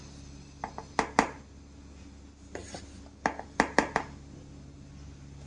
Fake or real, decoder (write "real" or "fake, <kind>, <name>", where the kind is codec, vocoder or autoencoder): real